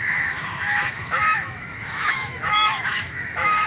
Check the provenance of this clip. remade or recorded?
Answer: remade